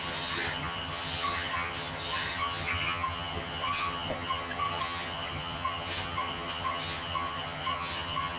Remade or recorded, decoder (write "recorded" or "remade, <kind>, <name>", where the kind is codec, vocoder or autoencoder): remade, vocoder, HiFi-GAN